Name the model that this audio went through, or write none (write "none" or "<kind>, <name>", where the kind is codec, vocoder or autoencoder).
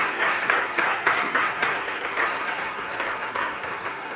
codec, SNAC